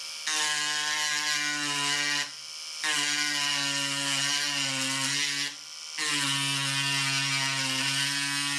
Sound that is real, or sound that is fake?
real